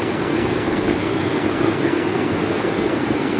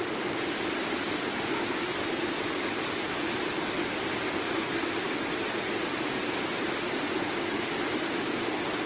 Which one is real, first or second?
second